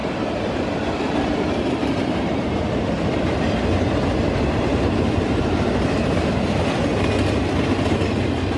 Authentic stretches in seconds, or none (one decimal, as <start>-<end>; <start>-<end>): 2.9-4.7; 8.1-8.6